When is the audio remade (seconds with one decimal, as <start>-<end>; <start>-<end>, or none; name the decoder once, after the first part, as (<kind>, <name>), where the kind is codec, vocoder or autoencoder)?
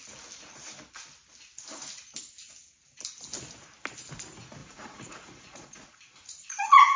4.6-7.0 (vocoder, Vocos)